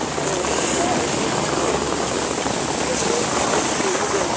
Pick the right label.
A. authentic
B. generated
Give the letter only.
A